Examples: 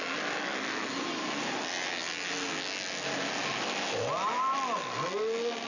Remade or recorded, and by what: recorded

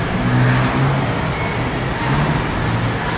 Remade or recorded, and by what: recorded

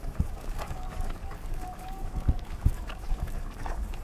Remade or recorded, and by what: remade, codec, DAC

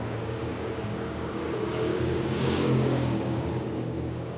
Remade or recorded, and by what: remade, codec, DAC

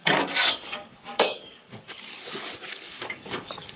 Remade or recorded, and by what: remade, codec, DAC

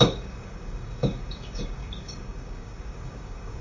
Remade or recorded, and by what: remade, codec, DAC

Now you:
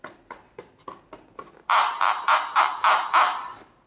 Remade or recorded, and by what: recorded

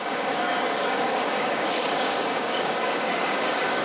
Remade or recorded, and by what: remade, codec, DAC